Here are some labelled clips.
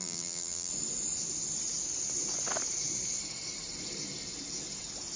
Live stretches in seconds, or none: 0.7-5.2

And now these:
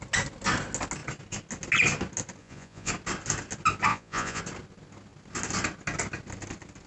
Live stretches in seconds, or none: 0.0-2.4; 2.9-3.9; 4.4-6.9

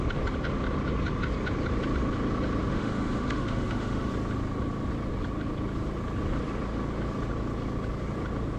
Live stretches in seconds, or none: 0.0-2.7; 4.1-8.6